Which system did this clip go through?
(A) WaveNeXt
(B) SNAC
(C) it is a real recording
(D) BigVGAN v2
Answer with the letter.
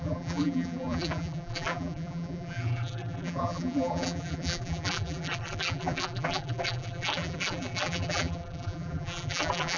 D